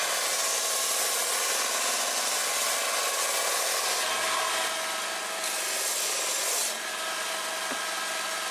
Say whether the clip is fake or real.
real